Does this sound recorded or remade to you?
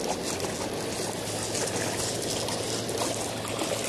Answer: recorded